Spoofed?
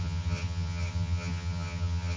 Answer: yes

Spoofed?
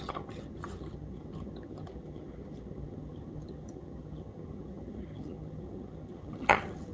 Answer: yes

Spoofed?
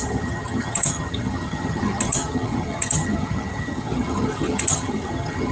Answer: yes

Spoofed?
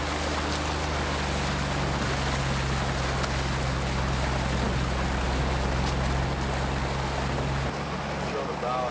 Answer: no